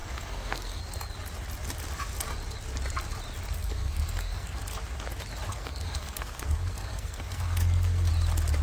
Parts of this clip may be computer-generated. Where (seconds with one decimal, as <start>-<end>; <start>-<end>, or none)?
0.0-0.8; 3.6-4.6; 5.5-8.1